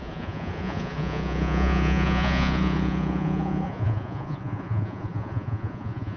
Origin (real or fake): fake